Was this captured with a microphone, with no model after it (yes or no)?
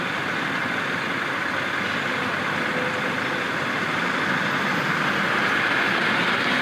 yes